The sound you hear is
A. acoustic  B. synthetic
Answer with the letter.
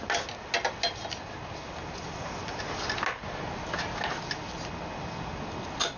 A